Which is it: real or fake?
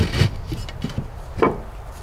real